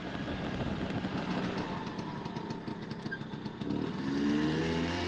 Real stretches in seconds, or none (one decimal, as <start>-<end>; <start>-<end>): 1.3-1.9; 2.7-4.6

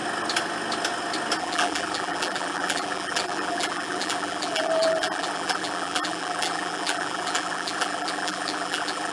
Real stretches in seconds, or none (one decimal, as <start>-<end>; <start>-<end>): 0.0-1.4

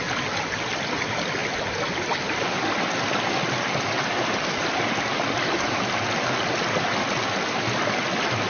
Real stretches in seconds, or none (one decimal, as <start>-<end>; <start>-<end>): 0.0-8.5

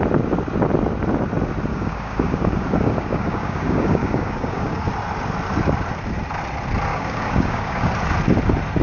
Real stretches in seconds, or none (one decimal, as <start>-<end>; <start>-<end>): 0.0-1.7; 4.9-6.9; 7.9-8.8

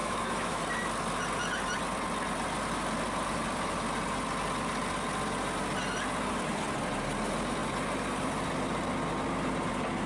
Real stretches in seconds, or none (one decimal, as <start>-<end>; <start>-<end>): 0.6-10.1